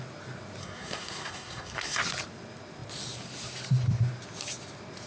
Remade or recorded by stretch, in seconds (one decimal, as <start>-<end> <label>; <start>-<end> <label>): 0.0-0.6 recorded; 0.6-2.0 remade; 2.0-5.1 recorded